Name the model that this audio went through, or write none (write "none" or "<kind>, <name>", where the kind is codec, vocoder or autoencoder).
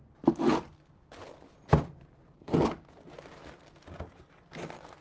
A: none